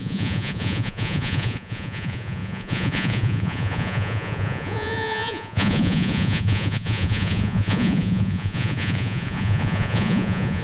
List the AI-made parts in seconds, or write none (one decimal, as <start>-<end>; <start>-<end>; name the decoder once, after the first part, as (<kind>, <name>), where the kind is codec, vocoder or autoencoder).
0.0-10.6 (vocoder, Vocos)